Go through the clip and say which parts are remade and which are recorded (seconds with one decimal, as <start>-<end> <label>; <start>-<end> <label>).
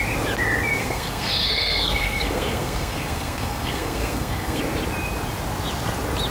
0.0-0.8 recorded; 0.8-4.6 remade; 4.6-6.3 recorded